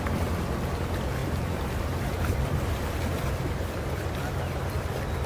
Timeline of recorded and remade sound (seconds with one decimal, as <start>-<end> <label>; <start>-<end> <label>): 0.0-1.2 recorded; 1.2-4.4 remade; 4.4-5.3 recorded